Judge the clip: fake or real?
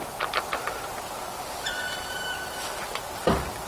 real